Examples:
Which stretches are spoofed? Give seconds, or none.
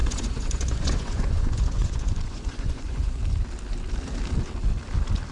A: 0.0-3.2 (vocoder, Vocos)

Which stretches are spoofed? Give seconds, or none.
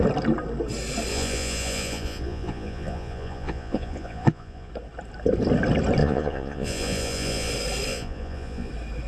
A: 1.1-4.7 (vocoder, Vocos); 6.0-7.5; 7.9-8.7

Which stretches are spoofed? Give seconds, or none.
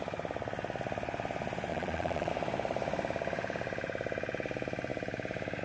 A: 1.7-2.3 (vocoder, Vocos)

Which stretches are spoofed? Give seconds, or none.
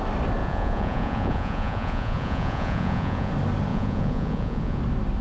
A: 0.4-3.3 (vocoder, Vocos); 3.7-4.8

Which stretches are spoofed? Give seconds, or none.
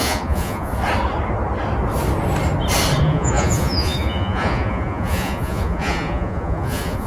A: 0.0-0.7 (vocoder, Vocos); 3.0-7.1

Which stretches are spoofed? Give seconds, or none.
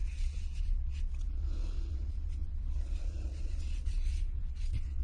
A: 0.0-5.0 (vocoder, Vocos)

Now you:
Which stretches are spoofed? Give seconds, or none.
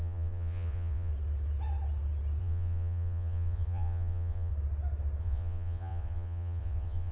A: 0.0-1.1 (vocoder, Vocos); 2.4-4.5; 5.2-7.1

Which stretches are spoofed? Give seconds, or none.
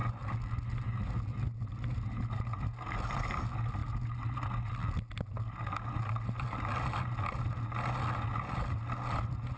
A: none